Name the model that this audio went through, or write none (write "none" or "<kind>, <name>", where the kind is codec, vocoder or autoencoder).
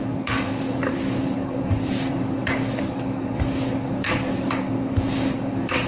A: codec, DAC